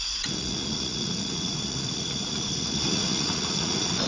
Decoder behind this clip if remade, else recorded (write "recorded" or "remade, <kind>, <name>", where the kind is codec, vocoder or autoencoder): remade, vocoder, Vocos